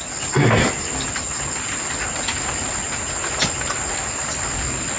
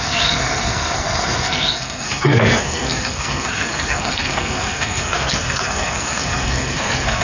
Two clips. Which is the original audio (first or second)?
first